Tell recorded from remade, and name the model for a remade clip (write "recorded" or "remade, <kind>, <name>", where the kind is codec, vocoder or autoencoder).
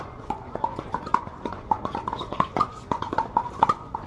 remade, vocoder, Vocos